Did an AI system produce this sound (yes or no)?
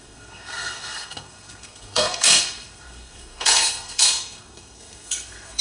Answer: yes